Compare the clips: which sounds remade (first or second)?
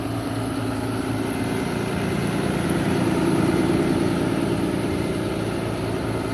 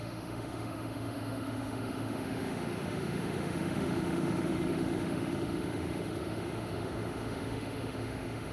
second